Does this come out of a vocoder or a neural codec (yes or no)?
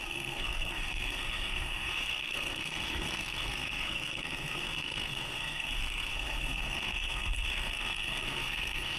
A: yes